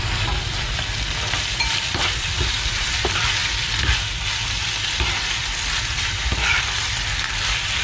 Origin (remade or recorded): remade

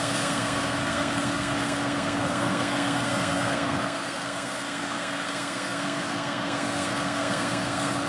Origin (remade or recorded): remade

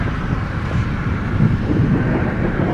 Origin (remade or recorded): remade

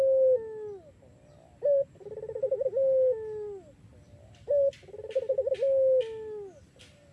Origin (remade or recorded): recorded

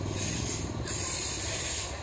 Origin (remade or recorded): recorded